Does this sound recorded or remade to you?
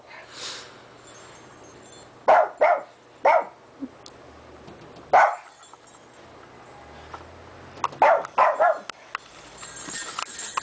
recorded